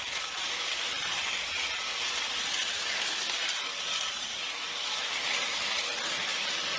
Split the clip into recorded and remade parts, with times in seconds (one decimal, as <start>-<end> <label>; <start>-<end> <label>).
0.0-6.8 remade